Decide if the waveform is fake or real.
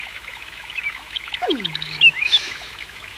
fake